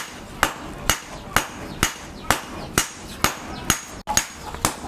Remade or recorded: recorded